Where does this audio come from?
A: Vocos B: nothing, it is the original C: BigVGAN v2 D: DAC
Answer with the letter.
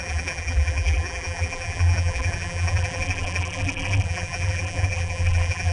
C